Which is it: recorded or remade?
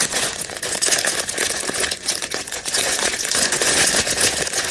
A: remade